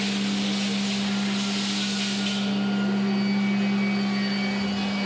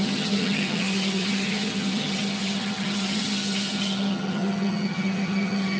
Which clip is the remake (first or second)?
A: second